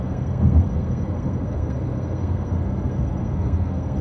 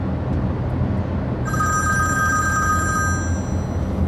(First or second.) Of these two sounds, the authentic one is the second